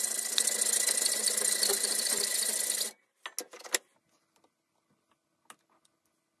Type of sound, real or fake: real